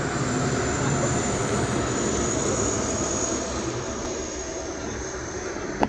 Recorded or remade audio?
recorded